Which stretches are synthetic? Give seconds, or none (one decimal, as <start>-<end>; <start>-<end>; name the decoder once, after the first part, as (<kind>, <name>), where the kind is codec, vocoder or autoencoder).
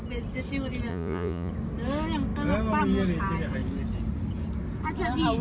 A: 0.9-1.5 (vocoder, Vocos)